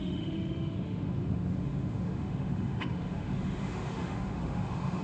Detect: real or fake fake